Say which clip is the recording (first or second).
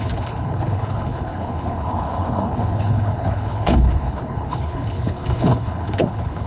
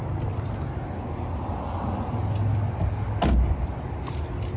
second